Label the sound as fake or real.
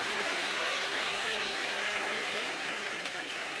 fake